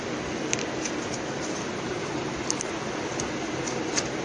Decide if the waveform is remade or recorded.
remade